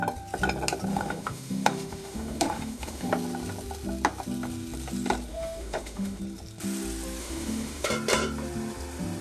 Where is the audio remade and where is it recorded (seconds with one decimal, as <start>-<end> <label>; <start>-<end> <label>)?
0.0-0.9 recorded; 0.9-3.1 remade; 3.1-5.3 recorded; 5.3-6.2 remade; 6.2-7.2 recorded; 7.2-7.9 remade; 7.9-9.2 recorded